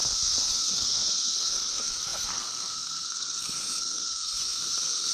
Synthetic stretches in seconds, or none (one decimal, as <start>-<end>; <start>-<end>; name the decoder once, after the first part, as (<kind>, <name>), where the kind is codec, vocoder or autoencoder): 0.0-5.1 (codec, SNAC)